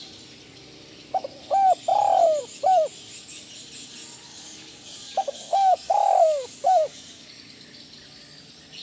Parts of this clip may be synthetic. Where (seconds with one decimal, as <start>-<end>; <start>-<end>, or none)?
4.3-7.3